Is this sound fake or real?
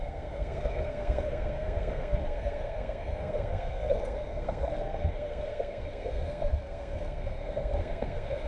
fake